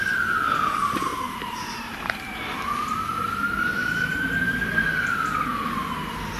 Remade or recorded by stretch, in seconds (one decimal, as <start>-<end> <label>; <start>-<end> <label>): 0.0-1.1 recorded; 1.1-2.2 remade; 2.2-3.1 recorded; 3.1-4.7 remade; 4.7-6.4 recorded

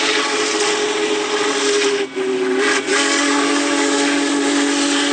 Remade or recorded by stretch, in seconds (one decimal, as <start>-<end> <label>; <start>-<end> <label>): 0.0-2.9 recorded; 2.9-4.3 remade; 4.3-5.1 recorded

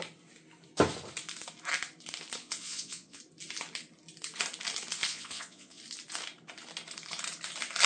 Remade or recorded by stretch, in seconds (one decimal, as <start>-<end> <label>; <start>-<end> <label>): 0.0-2.4 recorded; 2.4-3.2 remade; 3.2-5.1 recorded; 5.1-5.8 remade; 5.8-7.9 recorded